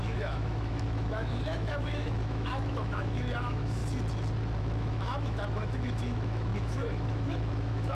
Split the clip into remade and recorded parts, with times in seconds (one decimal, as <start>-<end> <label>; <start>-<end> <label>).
0.0-3.8 remade; 3.8-4.6 recorded; 4.6-7.9 remade